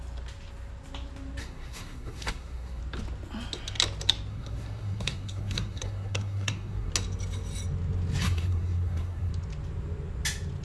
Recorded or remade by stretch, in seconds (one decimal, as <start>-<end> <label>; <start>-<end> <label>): 0.0-1.4 recorded; 1.4-2.8 remade; 2.8-4.3 recorded; 4.3-6.9 remade; 6.9-8.2 recorded; 8.2-9.3 remade; 9.3-10.6 recorded